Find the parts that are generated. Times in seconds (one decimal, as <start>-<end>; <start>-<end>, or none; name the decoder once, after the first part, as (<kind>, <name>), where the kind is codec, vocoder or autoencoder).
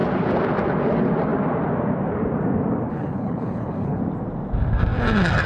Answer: 2.9-4.0 (codec, HILCodec)